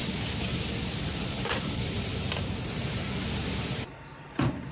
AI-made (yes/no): no